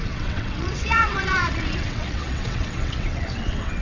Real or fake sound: fake